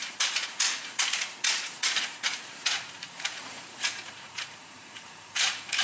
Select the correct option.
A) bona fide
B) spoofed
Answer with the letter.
B